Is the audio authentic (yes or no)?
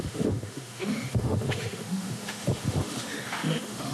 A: no